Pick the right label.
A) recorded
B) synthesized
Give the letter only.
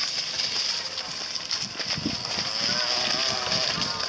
A